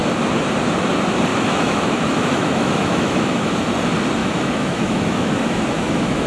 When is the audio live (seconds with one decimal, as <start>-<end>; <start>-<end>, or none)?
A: 0.0-1.3; 3.6-4.2